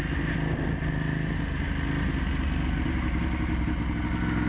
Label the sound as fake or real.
real